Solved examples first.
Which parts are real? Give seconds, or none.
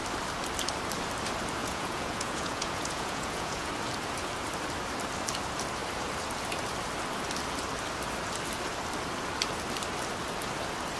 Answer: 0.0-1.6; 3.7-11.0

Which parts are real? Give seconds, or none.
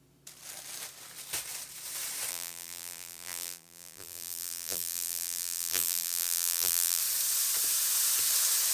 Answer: 0.0-2.3; 7.0-8.7